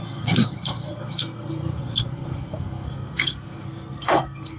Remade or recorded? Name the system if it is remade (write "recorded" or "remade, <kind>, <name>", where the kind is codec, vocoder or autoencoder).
remade, codec, SNAC